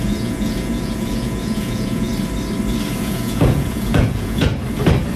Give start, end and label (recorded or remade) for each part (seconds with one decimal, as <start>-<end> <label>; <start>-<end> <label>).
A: 0.0-2.1 remade; 2.1-3.0 recorded; 3.0-4.5 remade; 4.5-5.2 recorded